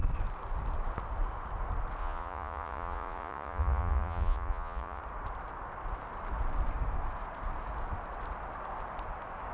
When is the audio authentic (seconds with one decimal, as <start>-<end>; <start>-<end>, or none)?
0.0-2.0; 5.0-9.5